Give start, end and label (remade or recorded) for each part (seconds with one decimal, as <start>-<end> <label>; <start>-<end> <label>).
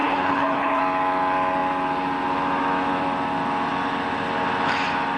0.0-0.8 remade; 0.8-5.2 recorded